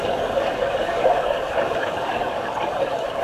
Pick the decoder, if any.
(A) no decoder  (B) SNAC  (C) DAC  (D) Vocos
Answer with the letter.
C